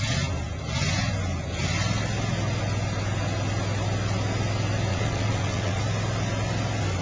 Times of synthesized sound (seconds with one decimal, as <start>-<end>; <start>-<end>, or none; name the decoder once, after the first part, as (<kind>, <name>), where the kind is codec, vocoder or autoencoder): 4.9-5.8 (vocoder, WaveNeXt)